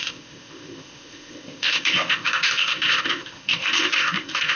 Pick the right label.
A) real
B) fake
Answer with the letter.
B